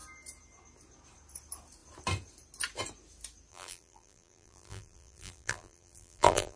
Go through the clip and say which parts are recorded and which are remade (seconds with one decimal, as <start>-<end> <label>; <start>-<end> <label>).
0.0-3.5 recorded; 3.5-6.6 remade